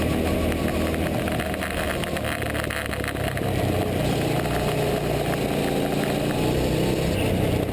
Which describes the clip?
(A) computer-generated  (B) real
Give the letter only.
B